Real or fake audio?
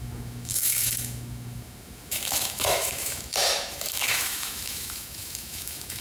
fake